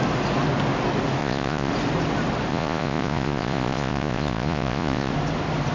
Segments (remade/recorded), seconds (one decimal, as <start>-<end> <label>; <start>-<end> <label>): 0.0-1.2 recorded; 1.2-1.7 remade; 1.7-2.5 recorded; 2.5-5.1 remade; 5.1-5.7 recorded

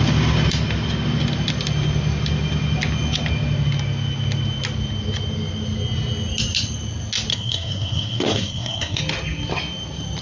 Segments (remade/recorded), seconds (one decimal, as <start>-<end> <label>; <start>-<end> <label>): 0.0-7.3 recorded; 7.3-9.0 remade; 9.0-10.2 recorded

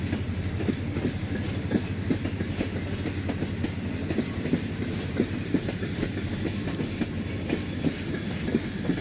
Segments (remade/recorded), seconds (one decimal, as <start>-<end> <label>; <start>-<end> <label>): 0.0-4.0 recorded; 4.0-6.3 remade; 6.3-9.0 recorded

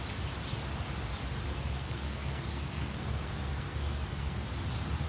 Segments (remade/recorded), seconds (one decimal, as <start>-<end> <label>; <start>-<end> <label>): 0.0-1.5 recorded; 1.5-4.4 remade; 4.4-5.1 recorded

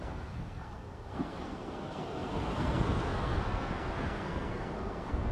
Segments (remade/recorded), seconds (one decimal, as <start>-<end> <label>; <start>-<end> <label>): 0.0-5.3 remade